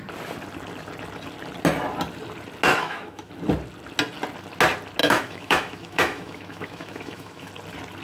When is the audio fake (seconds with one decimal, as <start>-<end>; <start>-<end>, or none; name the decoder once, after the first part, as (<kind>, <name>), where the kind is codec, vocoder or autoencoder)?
2.7-3.3 (autoencoder, DAC-VAE); 5.0-7.5